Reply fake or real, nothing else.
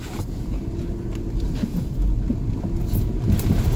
real